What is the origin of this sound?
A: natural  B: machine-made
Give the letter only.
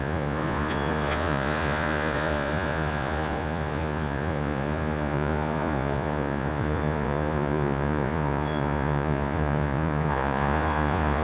B